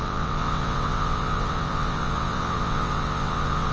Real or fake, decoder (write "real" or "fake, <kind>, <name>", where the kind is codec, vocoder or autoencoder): fake, vocoder, WaveNeXt